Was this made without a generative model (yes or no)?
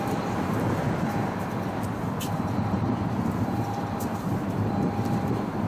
no